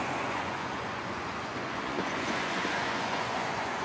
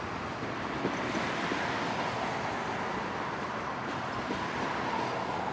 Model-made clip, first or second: first